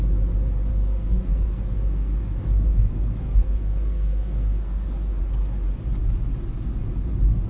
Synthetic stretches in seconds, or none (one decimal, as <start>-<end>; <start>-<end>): 0.7-5.2